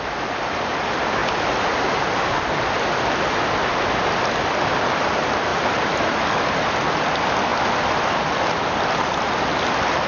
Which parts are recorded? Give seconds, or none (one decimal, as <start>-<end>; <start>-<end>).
0.0-10.1